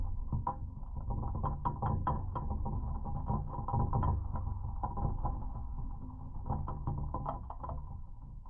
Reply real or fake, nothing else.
fake